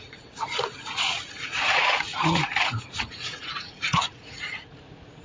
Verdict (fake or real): fake